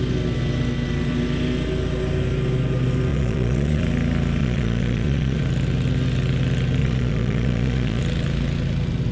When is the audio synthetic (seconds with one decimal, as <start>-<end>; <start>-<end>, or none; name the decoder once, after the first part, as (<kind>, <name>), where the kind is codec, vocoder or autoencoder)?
3.1-3.8 (vocoder, Vocos); 4.4-5.4; 6.8-8.0